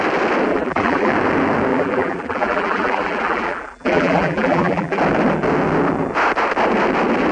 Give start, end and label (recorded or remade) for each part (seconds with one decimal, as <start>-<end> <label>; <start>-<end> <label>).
0.0-0.5 recorded; 0.5-1.1 remade; 1.1-1.7 recorded; 1.7-5.0 remade; 5.0-7.3 recorded